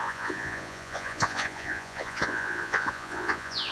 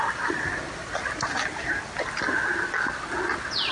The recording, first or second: second